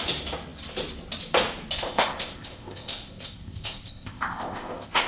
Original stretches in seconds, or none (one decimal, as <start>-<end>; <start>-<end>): 0.0-1.9